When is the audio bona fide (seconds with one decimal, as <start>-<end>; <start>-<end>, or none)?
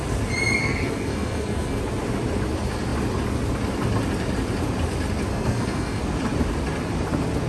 0.0-0.6; 1.8-5.3; 6.0-7.5